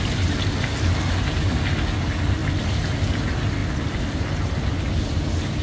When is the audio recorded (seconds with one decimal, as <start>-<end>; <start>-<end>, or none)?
0.0-5.6